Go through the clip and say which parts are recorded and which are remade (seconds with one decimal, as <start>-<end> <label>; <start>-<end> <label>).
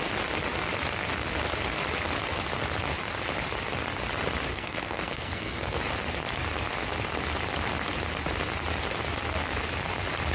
0.0-4.5 recorded; 4.5-5.8 remade; 5.8-10.3 recorded